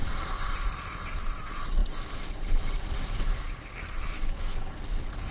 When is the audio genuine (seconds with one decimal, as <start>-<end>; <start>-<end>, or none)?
0.8-5.3